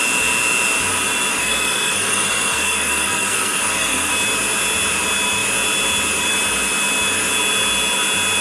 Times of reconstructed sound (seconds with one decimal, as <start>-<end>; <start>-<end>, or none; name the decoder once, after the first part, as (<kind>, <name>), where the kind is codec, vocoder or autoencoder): 1.3-4.1 (codec, SNAC)